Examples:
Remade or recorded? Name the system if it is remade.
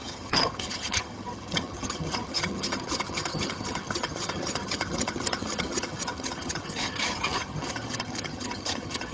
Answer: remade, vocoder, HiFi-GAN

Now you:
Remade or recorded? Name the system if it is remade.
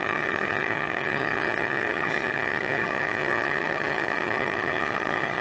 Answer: remade, vocoder, HiFi-GAN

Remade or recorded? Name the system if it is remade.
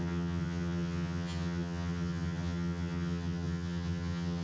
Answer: remade, vocoder, HiFi-GAN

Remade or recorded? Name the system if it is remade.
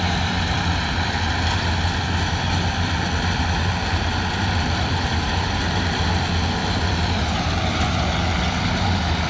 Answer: recorded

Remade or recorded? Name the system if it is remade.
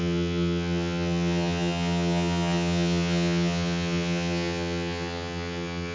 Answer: remade, vocoder, HiFi-GAN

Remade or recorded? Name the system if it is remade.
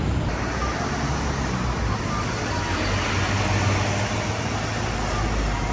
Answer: recorded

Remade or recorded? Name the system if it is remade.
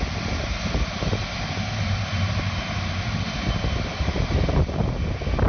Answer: recorded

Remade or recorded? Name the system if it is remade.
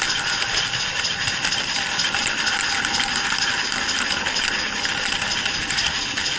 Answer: recorded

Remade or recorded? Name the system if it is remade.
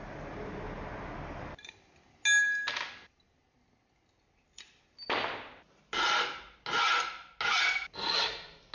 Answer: recorded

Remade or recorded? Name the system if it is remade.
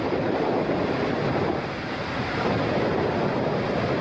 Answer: recorded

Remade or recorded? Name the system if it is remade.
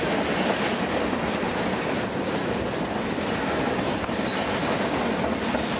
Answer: recorded